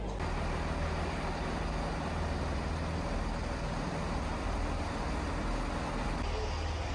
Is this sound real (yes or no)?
yes